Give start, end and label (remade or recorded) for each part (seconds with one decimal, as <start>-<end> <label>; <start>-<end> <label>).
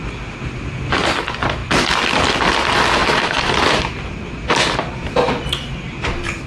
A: 0.0-3.0 recorded; 3.0-3.8 remade; 3.8-6.5 recorded